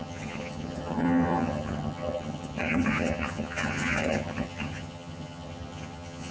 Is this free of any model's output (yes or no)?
no